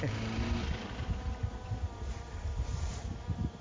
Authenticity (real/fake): fake